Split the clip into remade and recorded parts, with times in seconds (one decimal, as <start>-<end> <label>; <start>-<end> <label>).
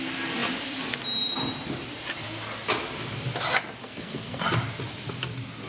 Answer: 0.0-3.8 recorded; 3.8-4.4 remade; 4.4-5.7 recorded